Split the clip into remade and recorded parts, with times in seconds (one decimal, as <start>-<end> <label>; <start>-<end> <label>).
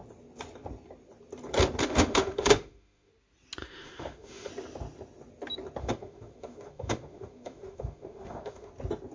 0.0-1.8 recorded; 1.8-3.1 remade; 3.1-3.6 recorded; 3.6-4.5 remade; 4.5-5.8 recorded; 5.8-8.7 remade; 8.7-9.1 recorded